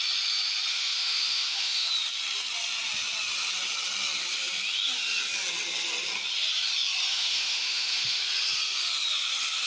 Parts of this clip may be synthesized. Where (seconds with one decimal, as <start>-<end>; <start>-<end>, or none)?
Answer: 0.7-1.9; 7.1-8.2